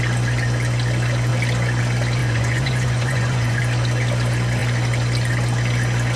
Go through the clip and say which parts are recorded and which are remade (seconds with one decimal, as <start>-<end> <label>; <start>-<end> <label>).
0.0-2.2 recorded; 2.2-3.6 remade; 3.6-6.2 recorded